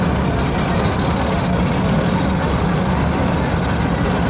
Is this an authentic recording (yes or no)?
yes